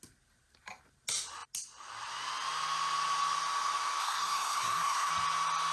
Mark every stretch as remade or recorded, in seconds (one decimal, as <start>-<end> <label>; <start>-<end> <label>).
0.0-4.0 recorded; 4.0-5.1 remade; 5.1-5.7 recorded